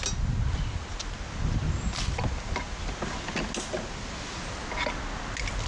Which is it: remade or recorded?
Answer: recorded